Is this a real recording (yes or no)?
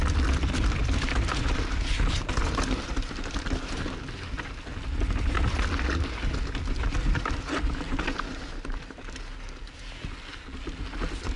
yes